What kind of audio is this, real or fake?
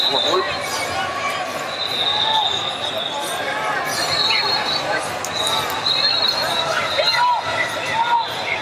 real